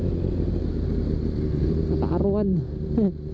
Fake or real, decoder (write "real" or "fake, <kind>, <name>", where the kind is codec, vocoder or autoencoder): real